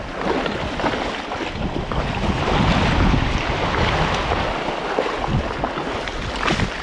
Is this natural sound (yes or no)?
yes